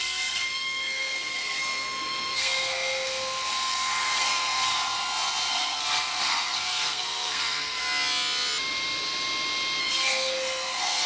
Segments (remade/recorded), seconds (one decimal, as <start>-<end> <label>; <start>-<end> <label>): 0.0-4.7 remade; 4.7-5.5 recorded; 5.5-7.8 remade; 7.8-9.8 recorded; 9.8-11.1 remade